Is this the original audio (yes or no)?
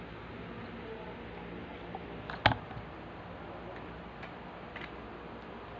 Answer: yes